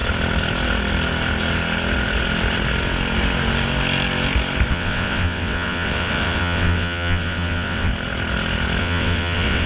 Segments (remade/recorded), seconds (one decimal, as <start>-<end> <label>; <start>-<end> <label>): 0.0-4.7 recorded; 4.7-7.9 remade; 7.9-8.8 recorded; 8.8-9.7 remade